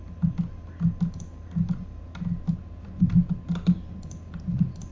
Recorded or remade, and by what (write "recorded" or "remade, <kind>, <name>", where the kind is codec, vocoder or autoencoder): recorded